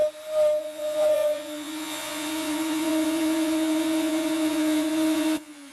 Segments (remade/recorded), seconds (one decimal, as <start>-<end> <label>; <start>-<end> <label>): 0.0-0.6 recorded; 0.6-5.7 remade